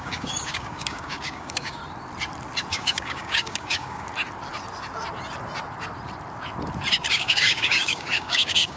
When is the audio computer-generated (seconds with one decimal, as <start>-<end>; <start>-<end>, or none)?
0.0-1.8; 2.7-4.1; 7.1-8.8